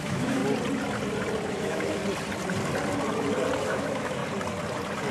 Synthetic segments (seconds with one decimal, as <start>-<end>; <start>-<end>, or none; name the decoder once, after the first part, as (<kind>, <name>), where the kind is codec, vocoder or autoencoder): 0.0-0.4 (autoencoder, DAC-VAE); 1.5-2.0; 3.6-4.2